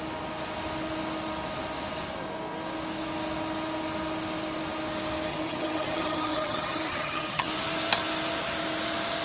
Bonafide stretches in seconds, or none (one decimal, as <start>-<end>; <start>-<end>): 0.0-5.3; 7.5-9.2